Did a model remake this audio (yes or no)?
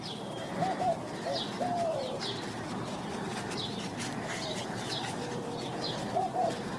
yes